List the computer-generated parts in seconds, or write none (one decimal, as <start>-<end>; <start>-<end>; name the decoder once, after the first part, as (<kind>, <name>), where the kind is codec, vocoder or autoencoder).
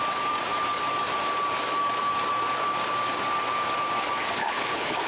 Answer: 4.4-5.1 (codec, HILCodec)